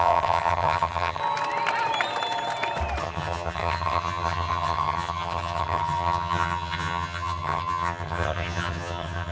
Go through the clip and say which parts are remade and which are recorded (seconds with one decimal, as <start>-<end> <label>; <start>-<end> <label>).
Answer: 0.0-1.2 remade; 1.2-3.0 recorded; 3.0-9.3 remade